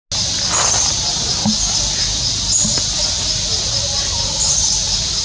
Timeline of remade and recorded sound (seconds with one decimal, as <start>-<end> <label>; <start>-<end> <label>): 0.0-5.2 recorded